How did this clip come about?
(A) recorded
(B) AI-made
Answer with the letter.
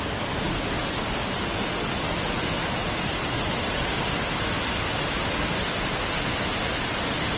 A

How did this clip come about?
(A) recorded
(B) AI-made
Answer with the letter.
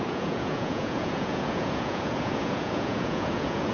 B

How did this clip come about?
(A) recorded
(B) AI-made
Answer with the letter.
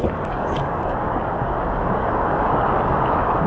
B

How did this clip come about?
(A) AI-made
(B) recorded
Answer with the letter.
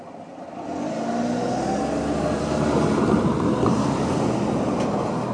B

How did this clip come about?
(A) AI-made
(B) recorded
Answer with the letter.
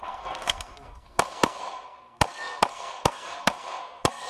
A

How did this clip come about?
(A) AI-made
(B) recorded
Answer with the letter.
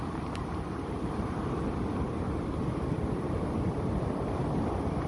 B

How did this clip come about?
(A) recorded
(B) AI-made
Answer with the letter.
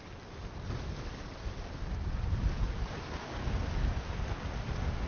A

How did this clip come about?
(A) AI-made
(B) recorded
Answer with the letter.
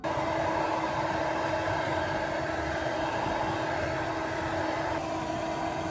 B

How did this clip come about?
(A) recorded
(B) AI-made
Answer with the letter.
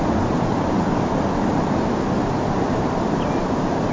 A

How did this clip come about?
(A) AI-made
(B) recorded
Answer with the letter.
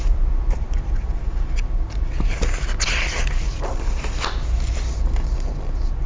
B